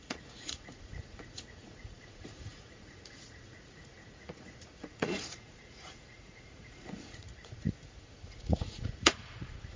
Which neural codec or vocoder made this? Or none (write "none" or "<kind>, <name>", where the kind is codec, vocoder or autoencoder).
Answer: vocoder, Vocos